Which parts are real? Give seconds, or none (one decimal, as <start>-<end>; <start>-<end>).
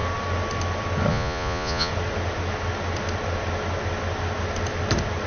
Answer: 0.0-1.1; 1.9-5.3